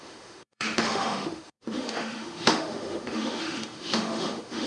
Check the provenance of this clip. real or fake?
fake